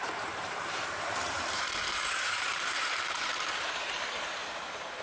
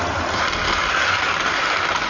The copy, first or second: first